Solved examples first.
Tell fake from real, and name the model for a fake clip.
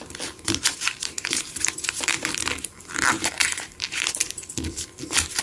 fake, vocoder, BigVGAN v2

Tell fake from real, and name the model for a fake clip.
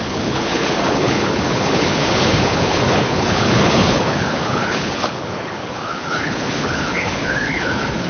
fake, codec, HILCodec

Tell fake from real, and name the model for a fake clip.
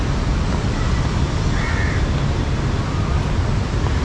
real